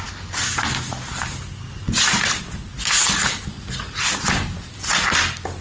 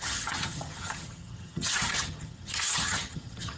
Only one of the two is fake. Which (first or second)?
second